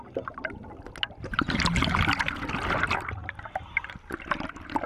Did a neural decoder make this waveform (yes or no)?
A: no